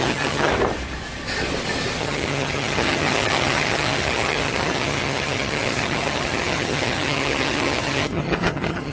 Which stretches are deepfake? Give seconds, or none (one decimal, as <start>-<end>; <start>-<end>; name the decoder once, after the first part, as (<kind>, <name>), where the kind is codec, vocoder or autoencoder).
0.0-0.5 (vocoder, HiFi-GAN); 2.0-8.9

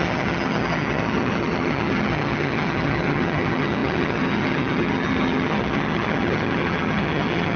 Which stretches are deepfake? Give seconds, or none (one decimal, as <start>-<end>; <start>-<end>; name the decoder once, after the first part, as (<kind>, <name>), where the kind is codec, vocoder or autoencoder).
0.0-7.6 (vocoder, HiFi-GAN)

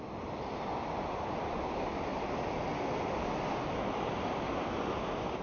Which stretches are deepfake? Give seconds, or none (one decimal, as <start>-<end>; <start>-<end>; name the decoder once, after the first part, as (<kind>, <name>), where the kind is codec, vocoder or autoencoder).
none

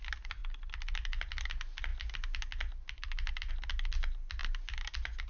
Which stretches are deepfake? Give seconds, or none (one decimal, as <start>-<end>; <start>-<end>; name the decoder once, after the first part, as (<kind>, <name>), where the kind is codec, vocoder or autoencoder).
none